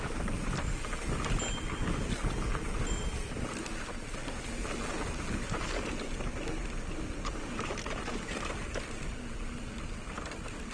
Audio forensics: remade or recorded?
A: recorded